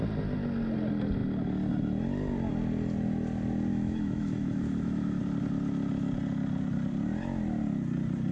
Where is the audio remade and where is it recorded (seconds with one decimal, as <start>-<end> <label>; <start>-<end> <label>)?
0.0-3.7 recorded; 3.7-5.2 remade; 5.2-8.3 recorded